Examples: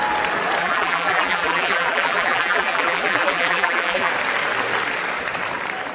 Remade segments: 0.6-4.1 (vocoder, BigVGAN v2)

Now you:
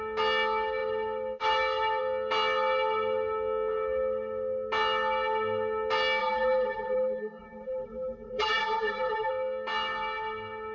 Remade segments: 6.2-9.3 (vocoder, BigVGAN v2)